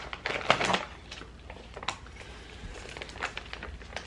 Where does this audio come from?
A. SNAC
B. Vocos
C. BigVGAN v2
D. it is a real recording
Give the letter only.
D